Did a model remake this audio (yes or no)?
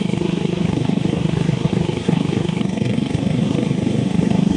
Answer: yes